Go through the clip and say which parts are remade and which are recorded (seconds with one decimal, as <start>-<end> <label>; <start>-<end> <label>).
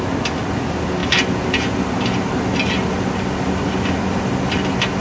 0.0-5.0 recorded